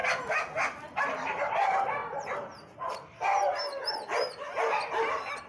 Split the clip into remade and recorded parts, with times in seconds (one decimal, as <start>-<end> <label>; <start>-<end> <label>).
0.0-5.5 recorded